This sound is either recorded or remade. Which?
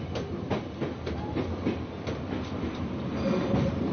recorded